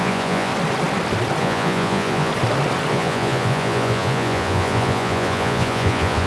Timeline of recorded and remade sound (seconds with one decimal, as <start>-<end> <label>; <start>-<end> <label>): 0.0-0.5 remade; 0.5-1.4 recorded; 1.4-2.3 remade; 2.3-2.9 recorded; 2.9-6.3 remade